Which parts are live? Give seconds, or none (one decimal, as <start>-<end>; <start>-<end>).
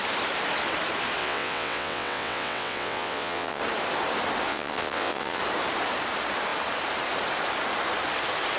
0.0-1.2; 3.6-4.5; 5.4-8.6